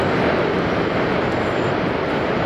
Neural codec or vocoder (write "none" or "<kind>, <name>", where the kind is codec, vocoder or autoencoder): none